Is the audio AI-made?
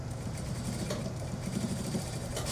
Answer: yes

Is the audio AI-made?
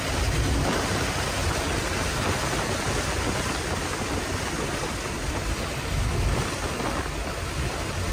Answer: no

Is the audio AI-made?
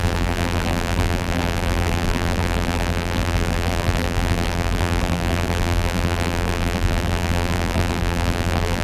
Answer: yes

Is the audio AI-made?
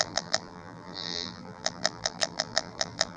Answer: yes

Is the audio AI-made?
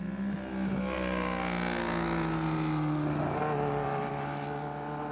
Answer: no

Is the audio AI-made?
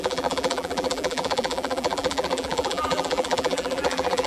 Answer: yes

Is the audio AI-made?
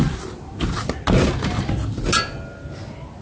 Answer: no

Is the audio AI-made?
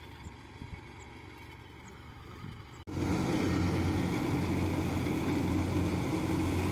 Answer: no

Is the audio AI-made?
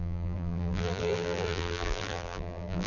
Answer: yes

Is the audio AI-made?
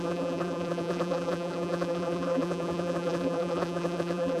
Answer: yes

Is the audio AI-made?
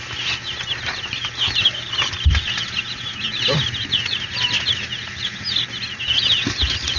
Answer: no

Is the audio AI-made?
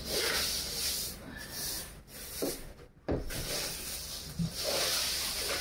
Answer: no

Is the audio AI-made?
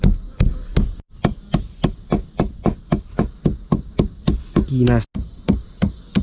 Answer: no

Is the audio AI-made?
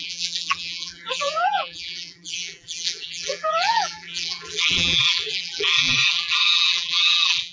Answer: yes